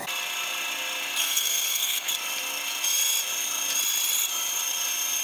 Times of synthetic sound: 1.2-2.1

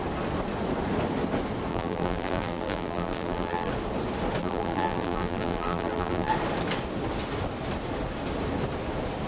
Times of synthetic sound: 1.7-3.7; 4.4-6.3

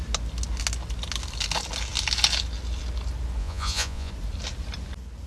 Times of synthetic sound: 3.4-4.1

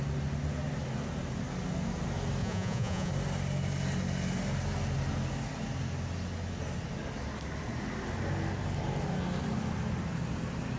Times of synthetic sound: 2.4-3.1

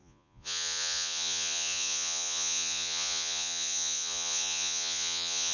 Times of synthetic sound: 0.0-5.5

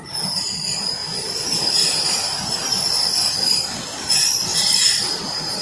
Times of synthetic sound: 1.0-3.8; 4.5-5.0

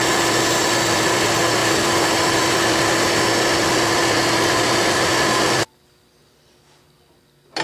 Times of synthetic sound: 1.6-2.6

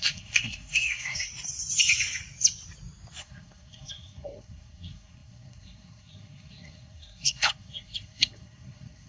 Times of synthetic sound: 0.0-1.3; 3.2-9.1